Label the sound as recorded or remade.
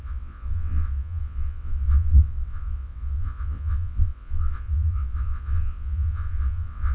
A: remade